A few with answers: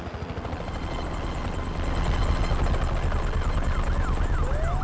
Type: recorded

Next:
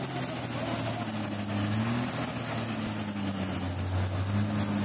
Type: recorded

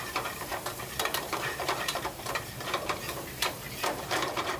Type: remade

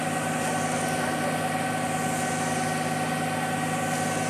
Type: recorded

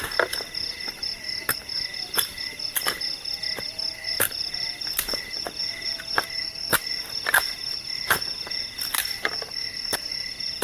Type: recorded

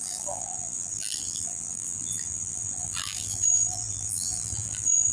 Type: remade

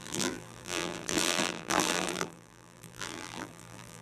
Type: remade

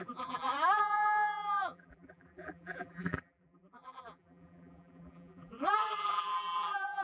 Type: remade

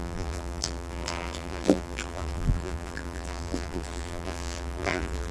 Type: remade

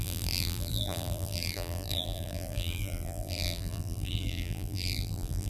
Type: remade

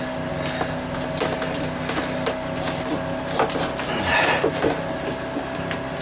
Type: recorded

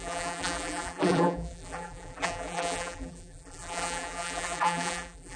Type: remade